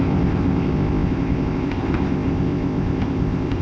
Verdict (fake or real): fake